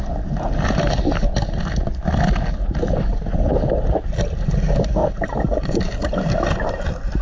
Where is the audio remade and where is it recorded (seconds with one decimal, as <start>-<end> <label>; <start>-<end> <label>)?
0.0-5.0 recorded; 5.0-5.9 remade; 5.9-7.2 recorded